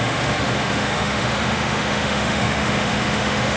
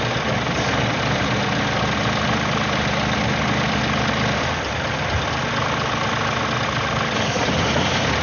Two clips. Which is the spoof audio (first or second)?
first